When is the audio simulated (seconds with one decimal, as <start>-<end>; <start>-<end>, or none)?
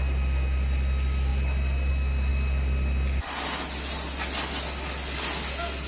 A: none